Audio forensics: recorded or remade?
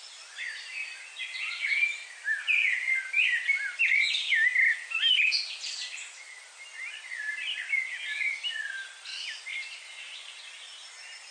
recorded